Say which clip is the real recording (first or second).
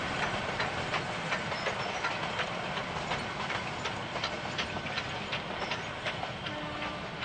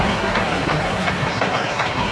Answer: first